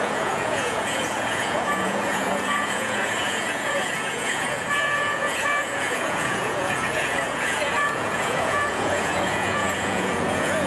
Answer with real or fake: fake